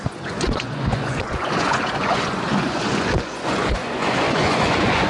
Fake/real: fake